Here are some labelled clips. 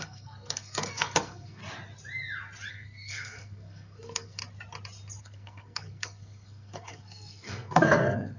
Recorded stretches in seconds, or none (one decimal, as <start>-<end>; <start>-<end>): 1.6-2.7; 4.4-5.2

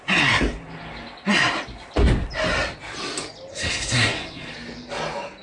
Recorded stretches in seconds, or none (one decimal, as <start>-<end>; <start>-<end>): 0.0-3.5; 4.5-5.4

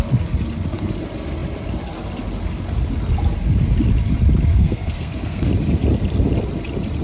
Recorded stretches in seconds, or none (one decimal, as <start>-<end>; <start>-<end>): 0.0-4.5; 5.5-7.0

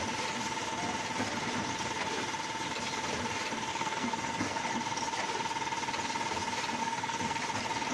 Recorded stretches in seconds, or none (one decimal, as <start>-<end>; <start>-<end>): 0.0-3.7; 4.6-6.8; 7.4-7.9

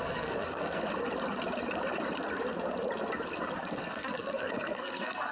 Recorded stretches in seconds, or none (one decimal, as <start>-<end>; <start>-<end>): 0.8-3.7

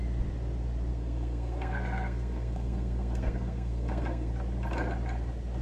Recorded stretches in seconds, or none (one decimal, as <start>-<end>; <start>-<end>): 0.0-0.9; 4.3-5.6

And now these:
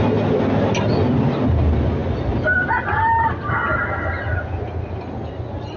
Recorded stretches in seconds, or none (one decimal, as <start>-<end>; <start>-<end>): 0.0-5.8

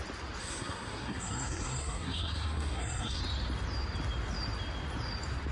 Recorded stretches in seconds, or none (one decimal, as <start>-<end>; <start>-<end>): 0.0-0.4; 3.2-5.5